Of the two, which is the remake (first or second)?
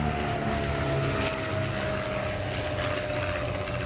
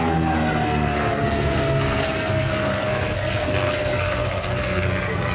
second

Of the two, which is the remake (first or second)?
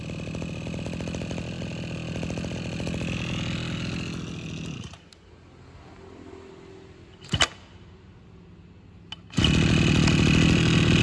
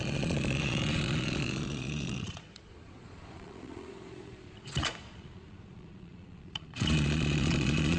second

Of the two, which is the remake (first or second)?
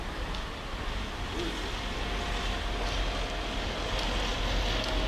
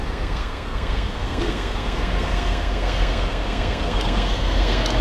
second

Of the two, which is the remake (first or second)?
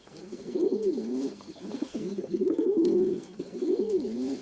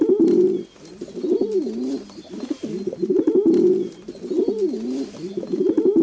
first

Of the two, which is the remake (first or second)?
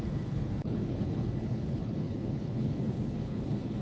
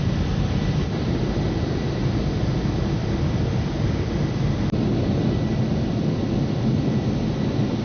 first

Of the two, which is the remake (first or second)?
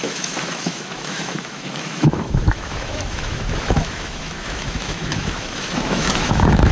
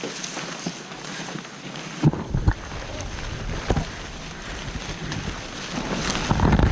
first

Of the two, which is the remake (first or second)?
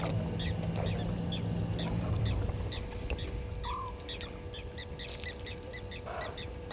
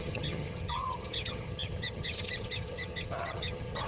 second